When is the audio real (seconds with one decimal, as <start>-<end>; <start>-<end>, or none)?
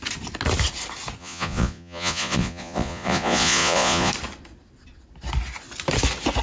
0.0-1.2; 4.1-6.4